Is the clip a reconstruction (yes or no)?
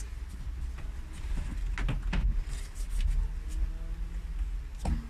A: no